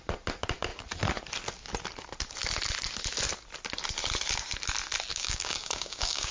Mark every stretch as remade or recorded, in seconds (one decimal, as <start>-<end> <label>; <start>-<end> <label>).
0.0-5.1 recorded; 5.1-6.3 remade

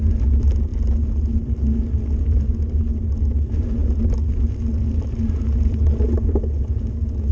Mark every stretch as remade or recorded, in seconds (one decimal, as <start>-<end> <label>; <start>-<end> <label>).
0.0-7.3 recorded

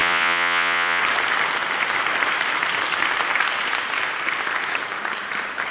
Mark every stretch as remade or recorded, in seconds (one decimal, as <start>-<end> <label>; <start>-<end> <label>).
0.0-1.0 remade; 1.0-5.7 recorded

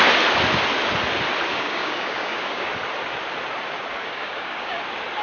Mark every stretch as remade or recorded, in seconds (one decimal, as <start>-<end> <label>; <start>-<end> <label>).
0.0-1.5 recorded; 1.5-2.7 remade; 2.7-4.0 recorded; 4.0-4.8 remade; 4.8-5.2 recorded

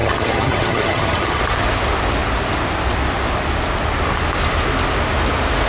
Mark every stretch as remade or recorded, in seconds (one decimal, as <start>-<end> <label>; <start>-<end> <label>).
0.0-1.4 remade; 1.4-5.7 recorded

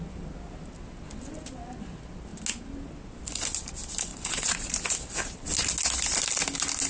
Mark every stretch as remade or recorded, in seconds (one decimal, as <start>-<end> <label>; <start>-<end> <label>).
0.0-4.1 recorded; 4.1-4.7 remade; 4.7-6.9 recorded

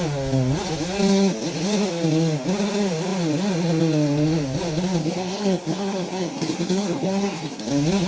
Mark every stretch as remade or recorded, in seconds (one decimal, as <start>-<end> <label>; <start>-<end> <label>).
0.0-5.0 recorded; 5.0-7.6 remade; 7.6-8.1 recorded

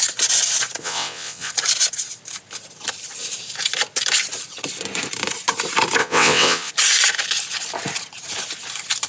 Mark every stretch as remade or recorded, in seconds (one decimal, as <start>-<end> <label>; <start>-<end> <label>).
0.0-0.8 recorded; 0.8-1.5 remade; 1.5-6.0 recorded; 6.0-6.7 remade; 6.7-9.1 recorded